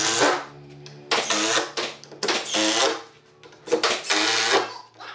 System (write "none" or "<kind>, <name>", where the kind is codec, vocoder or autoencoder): none